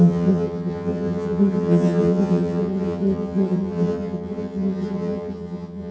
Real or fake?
fake